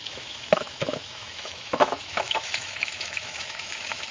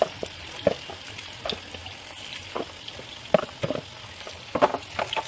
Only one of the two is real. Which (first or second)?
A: second